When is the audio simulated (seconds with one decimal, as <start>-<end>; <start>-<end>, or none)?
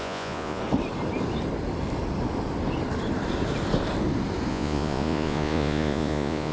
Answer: 0.0-0.6; 4.5-6.5